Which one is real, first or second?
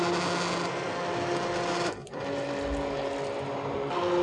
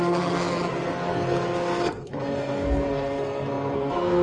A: first